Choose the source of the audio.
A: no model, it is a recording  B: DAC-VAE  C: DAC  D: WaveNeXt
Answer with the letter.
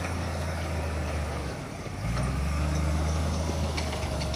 C